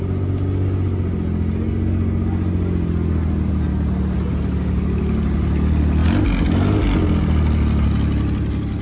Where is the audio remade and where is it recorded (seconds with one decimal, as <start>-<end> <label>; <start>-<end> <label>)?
0.0-8.8 recorded